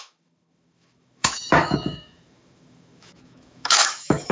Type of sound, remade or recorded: remade